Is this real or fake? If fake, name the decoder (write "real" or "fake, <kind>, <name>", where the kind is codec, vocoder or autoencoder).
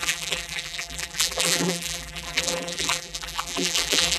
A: fake, vocoder, BigVGAN v2